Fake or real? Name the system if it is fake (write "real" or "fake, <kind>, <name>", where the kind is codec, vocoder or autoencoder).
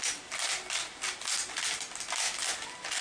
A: real